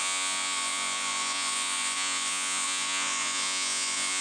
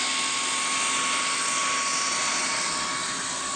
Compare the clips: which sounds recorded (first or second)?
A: second